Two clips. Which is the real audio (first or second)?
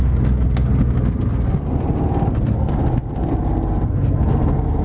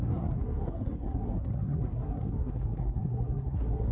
first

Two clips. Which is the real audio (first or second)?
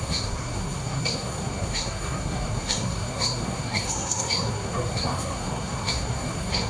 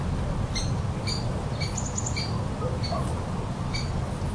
second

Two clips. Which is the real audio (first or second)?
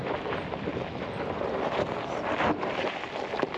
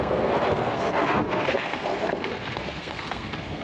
first